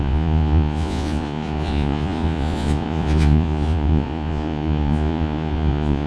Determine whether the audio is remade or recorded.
remade